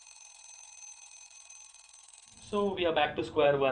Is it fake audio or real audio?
fake